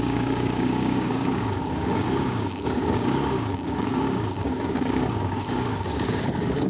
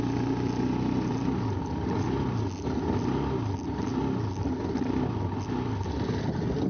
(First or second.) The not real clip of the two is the first